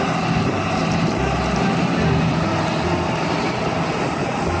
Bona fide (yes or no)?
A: yes